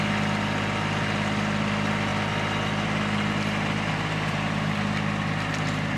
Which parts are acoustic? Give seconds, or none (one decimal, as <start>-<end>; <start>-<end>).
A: 0.0-6.0